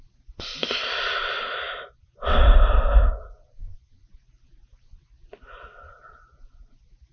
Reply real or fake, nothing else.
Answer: real